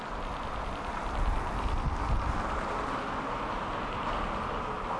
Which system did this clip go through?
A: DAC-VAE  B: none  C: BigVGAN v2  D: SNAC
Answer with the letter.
B